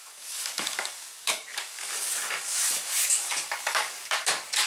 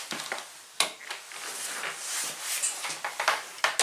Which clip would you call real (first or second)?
second